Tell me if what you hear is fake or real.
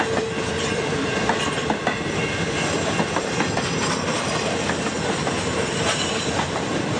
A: fake